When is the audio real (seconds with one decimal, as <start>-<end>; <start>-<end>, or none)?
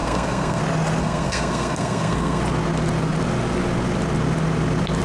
0.6-1.0; 2.4-5.0